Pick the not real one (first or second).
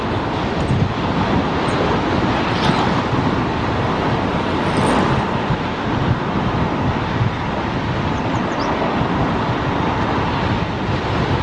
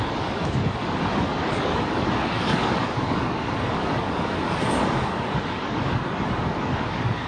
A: second